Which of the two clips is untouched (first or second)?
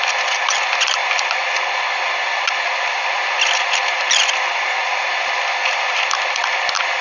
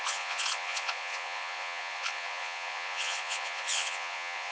first